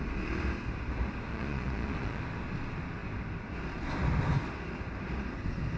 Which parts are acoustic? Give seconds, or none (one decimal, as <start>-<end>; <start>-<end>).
0.0-1.3; 2.2-5.8